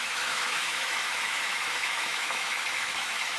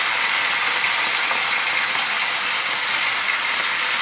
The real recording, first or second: second